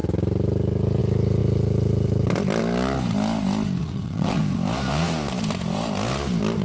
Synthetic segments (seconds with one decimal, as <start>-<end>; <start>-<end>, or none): 3.8-4.4